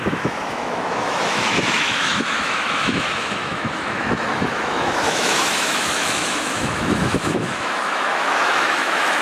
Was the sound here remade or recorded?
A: remade